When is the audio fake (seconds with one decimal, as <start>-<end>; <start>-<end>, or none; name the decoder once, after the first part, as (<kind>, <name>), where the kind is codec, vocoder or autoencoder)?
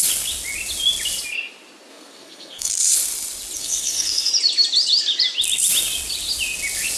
1.9-2.7 (codec, SNAC); 3.6-4.3